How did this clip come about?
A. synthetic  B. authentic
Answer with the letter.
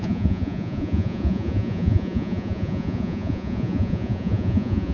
A